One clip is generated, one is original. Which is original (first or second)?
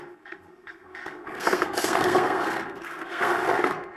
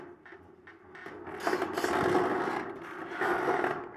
second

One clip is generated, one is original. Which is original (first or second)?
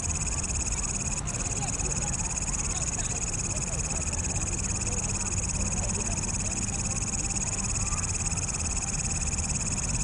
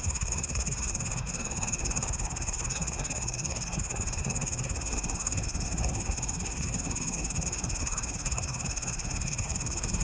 first